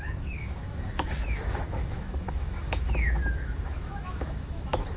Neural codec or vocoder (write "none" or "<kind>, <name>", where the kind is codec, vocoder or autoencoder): autoencoder, DAC-VAE